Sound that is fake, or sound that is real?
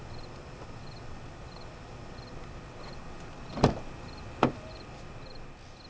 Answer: real